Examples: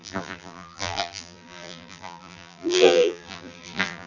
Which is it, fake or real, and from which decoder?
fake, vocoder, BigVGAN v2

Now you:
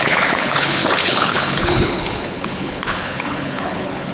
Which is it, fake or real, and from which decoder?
fake, codec, HILCodec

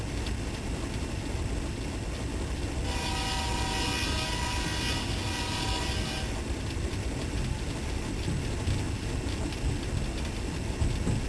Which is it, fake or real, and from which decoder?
real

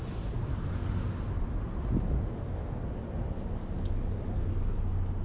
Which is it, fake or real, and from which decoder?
real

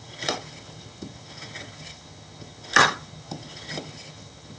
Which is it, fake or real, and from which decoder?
fake, vocoder, HiFi-GAN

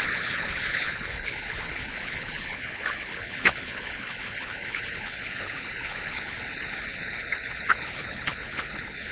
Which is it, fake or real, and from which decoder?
fake, codec, HILCodec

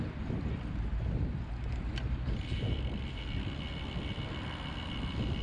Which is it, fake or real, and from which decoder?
fake, vocoder, BigVGAN v2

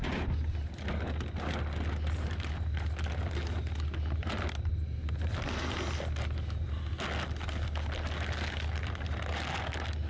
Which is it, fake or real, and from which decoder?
real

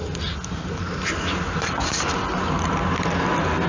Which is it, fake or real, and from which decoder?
real